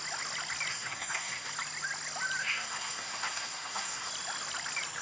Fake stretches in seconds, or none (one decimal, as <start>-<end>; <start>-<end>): 0.7-1.5; 2.4-4.1